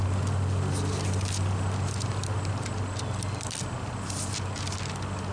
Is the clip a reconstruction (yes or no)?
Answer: no